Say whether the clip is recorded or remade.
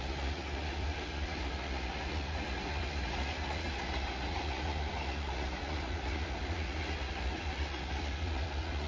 remade